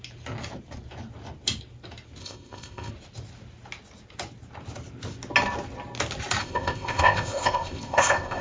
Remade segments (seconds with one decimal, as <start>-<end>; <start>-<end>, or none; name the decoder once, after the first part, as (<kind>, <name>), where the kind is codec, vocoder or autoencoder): 2.2-2.9 (codec, ZipCodec); 6.4-8.4